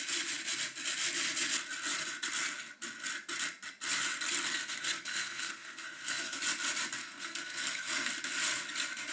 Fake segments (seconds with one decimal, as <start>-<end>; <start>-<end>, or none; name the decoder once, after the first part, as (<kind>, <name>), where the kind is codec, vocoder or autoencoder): 4.5-6.4 (codec, SNAC); 7.0-8.1